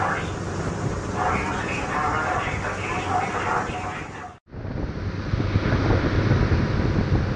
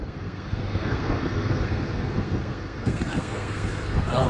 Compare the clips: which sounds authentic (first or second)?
first